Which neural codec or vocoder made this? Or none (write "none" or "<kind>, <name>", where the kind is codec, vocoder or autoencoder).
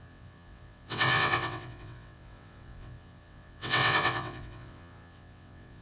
vocoder, WaveNeXt